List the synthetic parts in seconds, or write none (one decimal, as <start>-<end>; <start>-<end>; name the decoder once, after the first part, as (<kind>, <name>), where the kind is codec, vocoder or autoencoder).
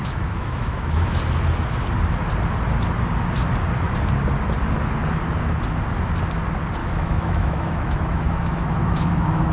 0.0-1.2 (autoencoder, DAC-VAE); 6.8-9.5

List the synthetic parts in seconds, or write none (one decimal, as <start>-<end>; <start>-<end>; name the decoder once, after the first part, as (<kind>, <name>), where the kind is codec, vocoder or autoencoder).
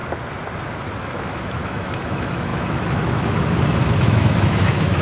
1.0-5.0 (autoencoder, DAC-VAE)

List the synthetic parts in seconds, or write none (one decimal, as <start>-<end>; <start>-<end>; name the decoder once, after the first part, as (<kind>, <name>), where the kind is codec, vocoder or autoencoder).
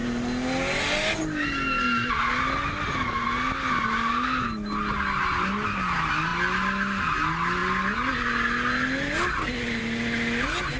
none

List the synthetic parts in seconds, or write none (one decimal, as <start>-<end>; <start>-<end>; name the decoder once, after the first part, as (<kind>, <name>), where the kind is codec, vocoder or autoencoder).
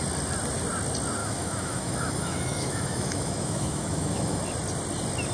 1.2-4.4 (autoencoder, DAC-VAE)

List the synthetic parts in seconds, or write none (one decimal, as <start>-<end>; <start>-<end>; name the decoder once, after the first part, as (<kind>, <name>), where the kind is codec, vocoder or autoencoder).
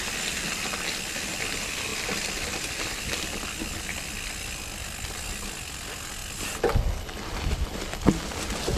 none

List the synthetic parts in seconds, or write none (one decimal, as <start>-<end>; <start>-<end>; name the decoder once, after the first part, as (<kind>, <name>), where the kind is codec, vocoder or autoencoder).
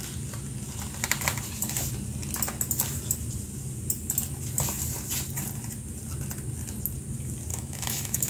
7.5-8.3 (autoencoder, DAC-VAE)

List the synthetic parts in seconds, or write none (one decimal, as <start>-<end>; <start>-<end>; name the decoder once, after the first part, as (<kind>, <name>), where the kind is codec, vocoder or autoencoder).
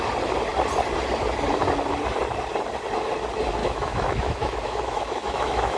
3.6-5.8 (autoencoder, DAC-VAE)